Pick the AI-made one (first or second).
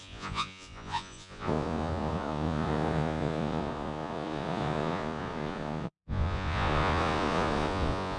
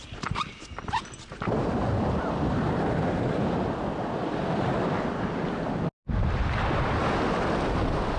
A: first